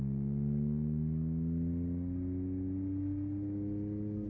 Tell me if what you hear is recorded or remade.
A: recorded